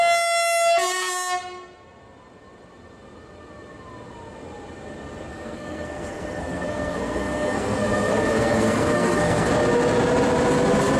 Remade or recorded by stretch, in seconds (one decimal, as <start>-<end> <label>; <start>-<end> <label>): 0.0-5.3 recorded; 5.3-9.5 remade; 9.5-11.0 recorded